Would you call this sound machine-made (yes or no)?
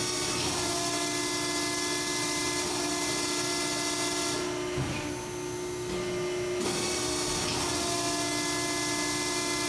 no